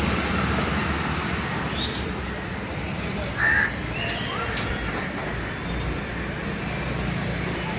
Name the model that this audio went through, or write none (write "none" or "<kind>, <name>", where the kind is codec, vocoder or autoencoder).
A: none